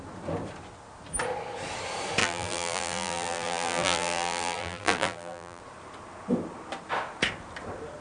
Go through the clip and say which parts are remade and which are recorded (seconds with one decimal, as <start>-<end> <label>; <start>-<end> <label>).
0.0-2.2 recorded; 2.2-5.6 remade; 5.6-8.0 recorded